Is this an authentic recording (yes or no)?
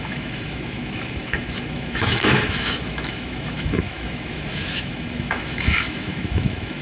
no